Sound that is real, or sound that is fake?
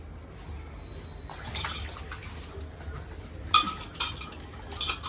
real